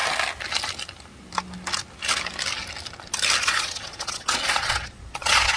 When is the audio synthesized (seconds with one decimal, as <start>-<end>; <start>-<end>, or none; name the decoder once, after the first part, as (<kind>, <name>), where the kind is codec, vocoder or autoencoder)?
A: 3.4-5.6 (vocoder, Vocos)